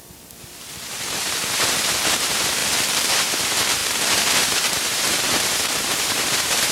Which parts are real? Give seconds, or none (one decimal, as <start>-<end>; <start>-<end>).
2.6-3.1